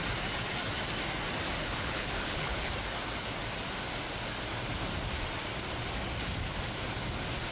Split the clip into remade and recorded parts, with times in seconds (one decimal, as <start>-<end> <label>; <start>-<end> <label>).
0.0-1.6 recorded; 1.6-2.7 remade; 2.7-7.5 recorded